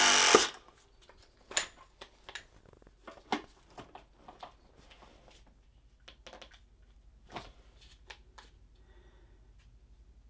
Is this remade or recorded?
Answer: recorded